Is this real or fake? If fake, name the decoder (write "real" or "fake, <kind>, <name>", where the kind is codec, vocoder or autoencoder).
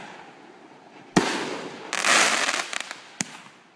real